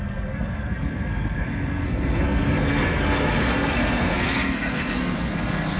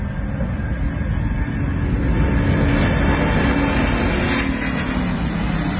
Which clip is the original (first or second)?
second